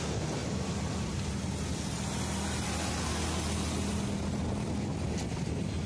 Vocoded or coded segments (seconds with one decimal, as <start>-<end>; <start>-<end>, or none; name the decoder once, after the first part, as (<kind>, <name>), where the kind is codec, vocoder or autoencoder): none